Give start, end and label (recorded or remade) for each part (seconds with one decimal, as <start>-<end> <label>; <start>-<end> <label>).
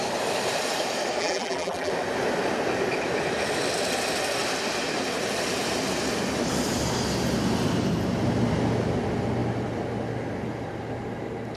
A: 0.0-1.2 recorded; 1.2-1.9 remade; 1.9-11.6 recorded